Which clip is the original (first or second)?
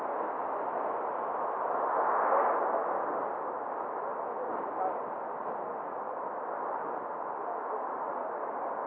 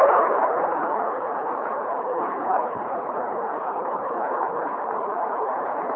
first